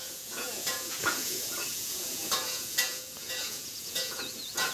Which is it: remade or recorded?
remade